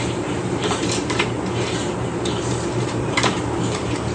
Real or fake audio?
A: fake